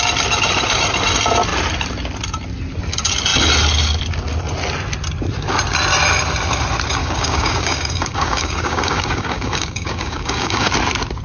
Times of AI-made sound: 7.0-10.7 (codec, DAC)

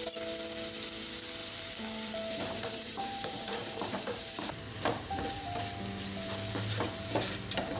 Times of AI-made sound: 1.4-5.6 (vocoder, BigVGAN v2)